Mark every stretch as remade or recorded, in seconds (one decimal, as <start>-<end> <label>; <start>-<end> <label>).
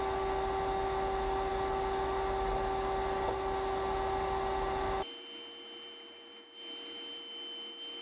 0.0-8.0 recorded